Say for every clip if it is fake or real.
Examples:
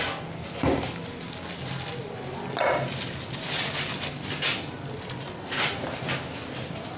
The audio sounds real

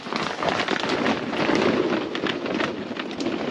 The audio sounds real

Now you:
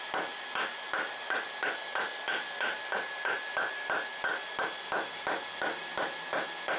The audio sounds real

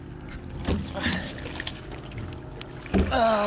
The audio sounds real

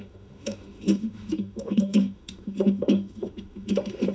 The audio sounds fake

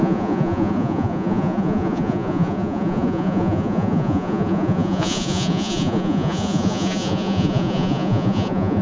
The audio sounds fake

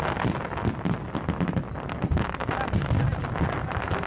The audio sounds real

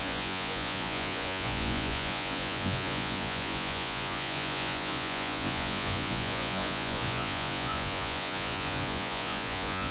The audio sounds fake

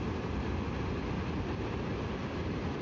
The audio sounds real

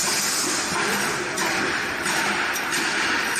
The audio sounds real